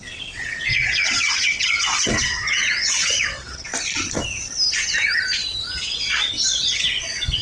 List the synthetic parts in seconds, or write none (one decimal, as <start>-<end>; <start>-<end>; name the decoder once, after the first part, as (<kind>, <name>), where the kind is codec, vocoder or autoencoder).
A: 0.0-3.7 (vocoder, WaveNeXt); 5.8-7.4

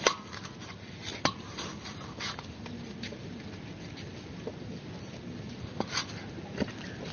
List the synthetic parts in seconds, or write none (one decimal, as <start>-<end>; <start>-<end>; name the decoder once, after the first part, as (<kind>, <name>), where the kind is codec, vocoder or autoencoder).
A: none

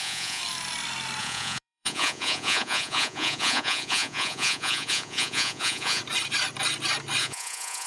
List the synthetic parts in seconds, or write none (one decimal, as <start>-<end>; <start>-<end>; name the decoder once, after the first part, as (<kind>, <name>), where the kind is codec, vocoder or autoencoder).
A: 0.0-0.4 (vocoder, Vocos); 1.2-6.0; 7.2-7.9

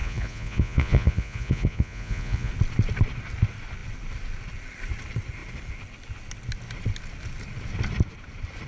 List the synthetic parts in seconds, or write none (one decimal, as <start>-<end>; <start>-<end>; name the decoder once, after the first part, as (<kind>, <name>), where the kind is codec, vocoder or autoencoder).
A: 0.0-2.5 (vocoder, Vocos)

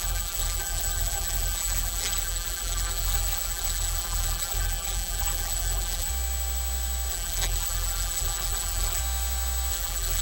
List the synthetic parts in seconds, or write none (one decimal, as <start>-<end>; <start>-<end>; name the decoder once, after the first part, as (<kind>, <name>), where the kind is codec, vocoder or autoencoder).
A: 0.0-6.1 (vocoder, BigVGAN v2); 7.1-9.0; 9.7-10.2

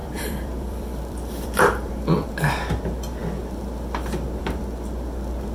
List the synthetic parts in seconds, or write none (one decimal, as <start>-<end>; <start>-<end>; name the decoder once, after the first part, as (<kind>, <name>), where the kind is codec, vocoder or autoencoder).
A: 0.0-2.3 (vocoder, BigVGAN v2)

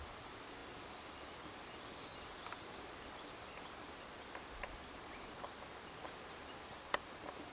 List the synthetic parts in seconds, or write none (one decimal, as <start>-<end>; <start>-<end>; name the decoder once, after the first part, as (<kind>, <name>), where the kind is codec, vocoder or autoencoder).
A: 2.1-6.6 (vocoder, BigVGAN v2)

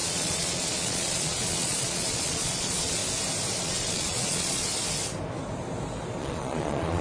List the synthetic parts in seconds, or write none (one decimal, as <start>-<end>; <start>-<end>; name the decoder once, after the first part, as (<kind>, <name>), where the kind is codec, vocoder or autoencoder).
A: 0.0-3.0 (vocoder, Vocos); 3.6-4.7; 6.2-7.0